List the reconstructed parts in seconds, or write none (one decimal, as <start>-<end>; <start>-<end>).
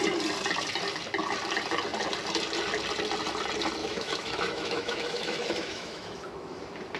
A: 3.8-6.6